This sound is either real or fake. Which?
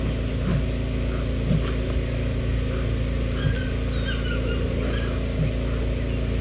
real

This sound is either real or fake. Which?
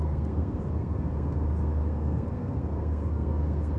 fake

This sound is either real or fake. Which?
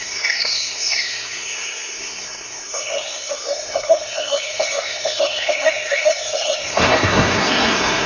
fake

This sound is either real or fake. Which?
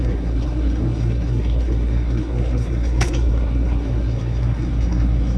fake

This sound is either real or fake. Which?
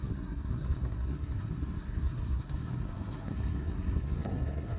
fake